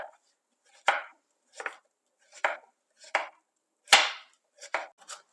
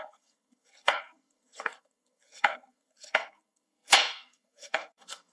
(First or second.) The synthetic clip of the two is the second